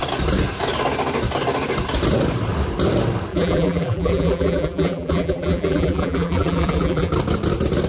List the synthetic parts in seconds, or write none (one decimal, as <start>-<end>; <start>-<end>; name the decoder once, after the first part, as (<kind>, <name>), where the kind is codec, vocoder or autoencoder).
3.3-7.1 (vocoder, BigVGAN v2)